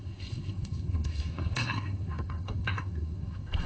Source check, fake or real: fake